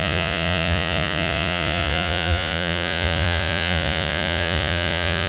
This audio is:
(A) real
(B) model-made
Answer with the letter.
B